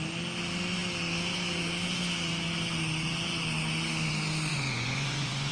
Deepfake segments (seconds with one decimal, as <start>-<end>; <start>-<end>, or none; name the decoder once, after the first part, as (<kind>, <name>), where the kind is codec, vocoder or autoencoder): 4.5-5.5 (vocoder, Vocos)